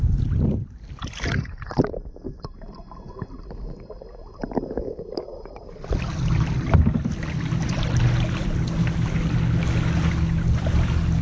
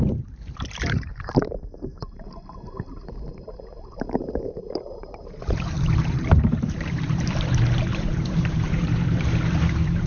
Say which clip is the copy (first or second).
second